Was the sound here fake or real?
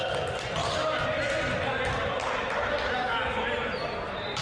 real